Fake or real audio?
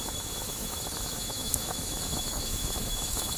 fake